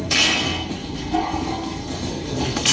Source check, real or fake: fake